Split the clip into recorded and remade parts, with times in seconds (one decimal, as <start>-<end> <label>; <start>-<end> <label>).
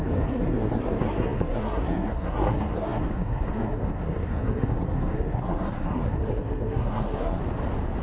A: 0.0-7.4 remade; 7.4-8.0 recorded